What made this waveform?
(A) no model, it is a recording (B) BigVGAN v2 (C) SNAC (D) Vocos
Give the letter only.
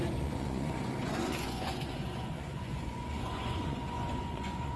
D